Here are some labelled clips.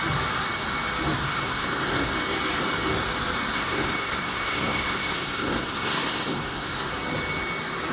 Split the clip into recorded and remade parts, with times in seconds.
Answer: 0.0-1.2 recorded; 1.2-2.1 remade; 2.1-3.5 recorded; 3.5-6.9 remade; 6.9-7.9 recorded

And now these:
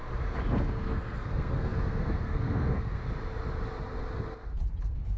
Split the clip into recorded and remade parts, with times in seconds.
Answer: 0.0-0.7 recorded; 0.7-3.0 remade; 3.0-4.8 recorded; 4.8-5.2 remade

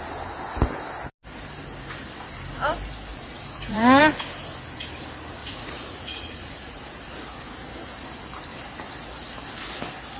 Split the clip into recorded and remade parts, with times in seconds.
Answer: 0.0-3.1 recorded; 3.1-4.0 remade; 4.0-5.4 recorded; 5.4-6.8 remade; 6.8-10.2 recorded

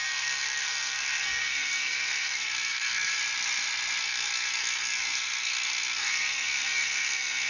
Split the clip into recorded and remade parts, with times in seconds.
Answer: 0.0-3.2 remade; 3.2-4.0 recorded; 4.0-7.5 remade